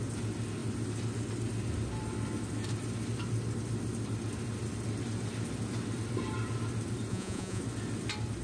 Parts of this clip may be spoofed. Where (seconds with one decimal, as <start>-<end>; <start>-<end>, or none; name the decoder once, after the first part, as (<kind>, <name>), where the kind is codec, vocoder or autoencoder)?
7.1-7.6 (vocoder, Vocos)